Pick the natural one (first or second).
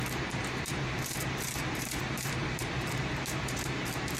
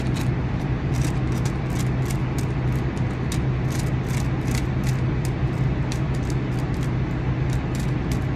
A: second